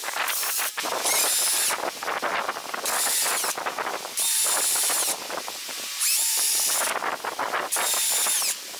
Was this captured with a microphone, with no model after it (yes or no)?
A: yes